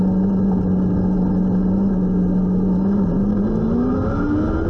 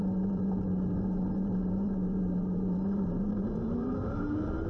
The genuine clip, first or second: first